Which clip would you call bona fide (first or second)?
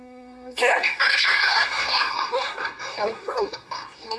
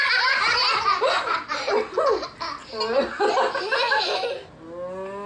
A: second